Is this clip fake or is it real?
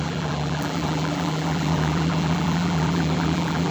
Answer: fake